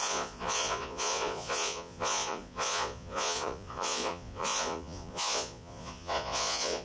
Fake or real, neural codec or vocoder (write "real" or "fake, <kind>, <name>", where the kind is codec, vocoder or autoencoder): fake, vocoder, Vocos